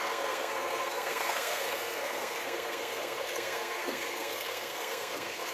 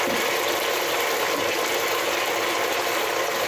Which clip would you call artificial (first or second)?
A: first